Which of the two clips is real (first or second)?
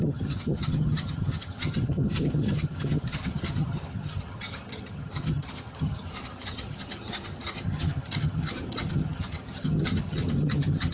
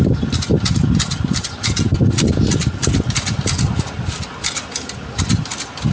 second